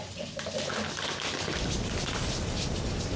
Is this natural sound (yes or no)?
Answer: yes